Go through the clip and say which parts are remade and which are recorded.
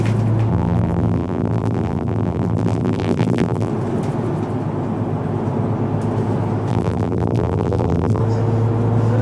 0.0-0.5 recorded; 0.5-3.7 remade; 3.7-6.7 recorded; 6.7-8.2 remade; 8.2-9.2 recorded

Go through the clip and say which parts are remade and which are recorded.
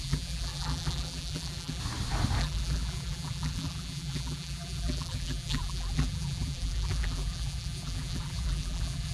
0.0-1.8 remade; 1.8-2.4 recorded; 2.4-9.1 remade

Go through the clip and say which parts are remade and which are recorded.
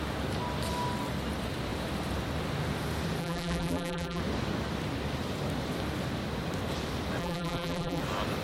0.0-3.2 recorded; 3.2-4.2 remade; 4.2-7.2 recorded; 7.2-8.0 remade; 8.0-8.4 recorded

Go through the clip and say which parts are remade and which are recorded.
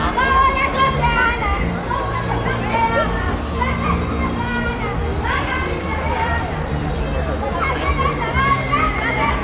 0.0-5.1 recorded; 5.1-7.0 remade; 7.0-9.4 recorded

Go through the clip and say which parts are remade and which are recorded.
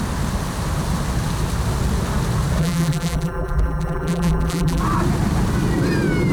0.0-2.6 recorded; 2.6-4.8 remade; 4.8-6.3 recorded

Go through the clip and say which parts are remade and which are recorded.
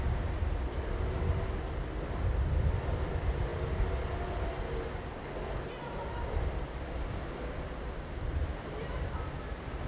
0.0-9.9 recorded